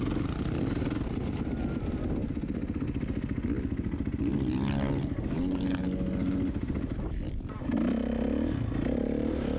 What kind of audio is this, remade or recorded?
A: recorded